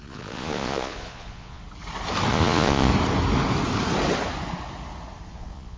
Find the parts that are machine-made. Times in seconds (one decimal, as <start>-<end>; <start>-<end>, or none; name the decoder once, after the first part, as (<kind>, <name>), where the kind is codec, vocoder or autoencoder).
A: 0.0-1.6 (vocoder, Vocos); 2.3-2.9; 5.3-5.8